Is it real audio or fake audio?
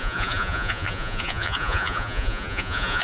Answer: fake